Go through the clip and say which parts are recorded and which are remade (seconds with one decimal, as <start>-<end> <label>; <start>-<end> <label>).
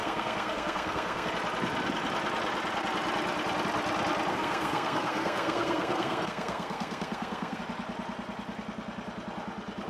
0.0-1.3 remade; 1.3-4.3 recorded; 4.3-7.6 remade; 7.6-9.9 recorded